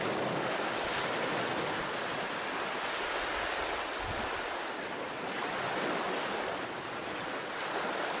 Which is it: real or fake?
real